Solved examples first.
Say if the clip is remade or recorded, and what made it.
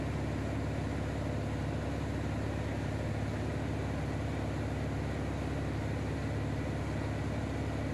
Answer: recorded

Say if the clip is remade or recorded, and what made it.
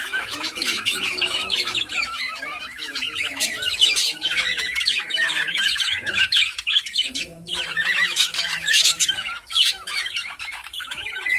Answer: remade, autoencoder, DAC-VAE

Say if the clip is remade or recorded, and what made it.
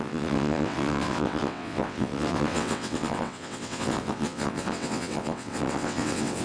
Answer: remade, vocoder, WaveNeXt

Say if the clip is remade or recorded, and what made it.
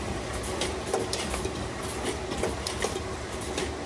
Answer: recorded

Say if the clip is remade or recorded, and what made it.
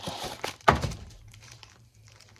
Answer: remade, vocoder, BigVGAN v2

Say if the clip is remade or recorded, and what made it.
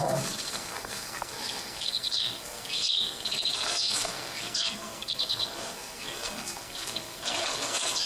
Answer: remade, codec, SNAC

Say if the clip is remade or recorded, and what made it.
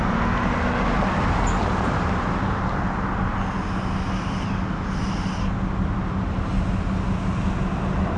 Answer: recorded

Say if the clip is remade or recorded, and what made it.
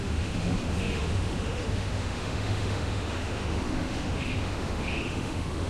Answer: remade, autoencoder, DAC-VAE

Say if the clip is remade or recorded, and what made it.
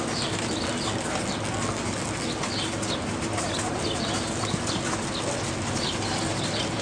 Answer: recorded